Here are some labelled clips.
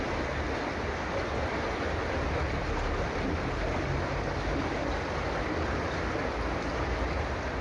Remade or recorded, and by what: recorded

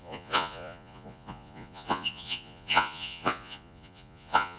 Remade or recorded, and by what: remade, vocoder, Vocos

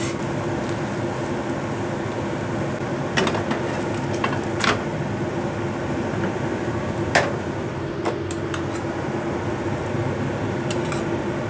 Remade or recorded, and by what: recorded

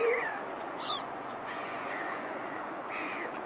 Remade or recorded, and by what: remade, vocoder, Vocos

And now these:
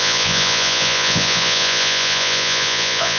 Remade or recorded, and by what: remade, vocoder, Vocos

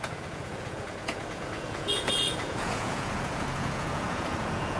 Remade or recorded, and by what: remade, vocoder, Vocos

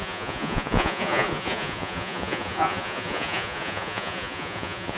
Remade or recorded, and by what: remade, vocoder, Vocos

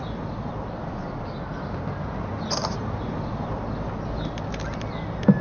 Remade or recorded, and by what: recorded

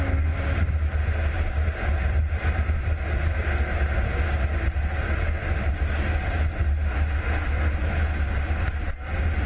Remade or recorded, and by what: recorded